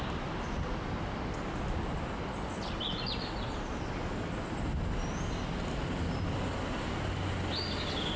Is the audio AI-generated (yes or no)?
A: no